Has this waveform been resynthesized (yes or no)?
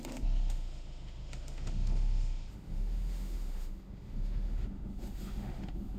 yes